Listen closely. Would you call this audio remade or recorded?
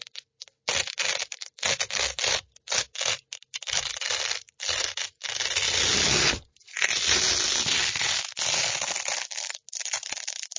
recorded